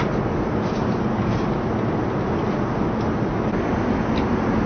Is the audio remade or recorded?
recorded